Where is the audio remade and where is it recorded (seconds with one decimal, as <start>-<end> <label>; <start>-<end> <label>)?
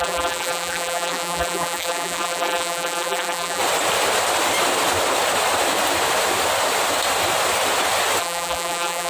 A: 0.0-3.6 remade; 3.6-8.2 recorded; 8.2-9.1 remade